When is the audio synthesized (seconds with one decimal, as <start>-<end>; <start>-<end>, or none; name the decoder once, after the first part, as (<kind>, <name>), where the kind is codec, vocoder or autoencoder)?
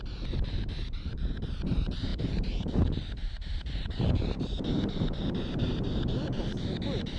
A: 0.0-7.2 (vocoder, BigVGAN v2)